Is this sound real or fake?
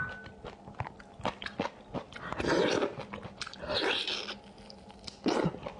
real